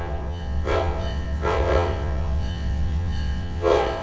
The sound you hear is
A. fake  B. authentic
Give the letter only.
A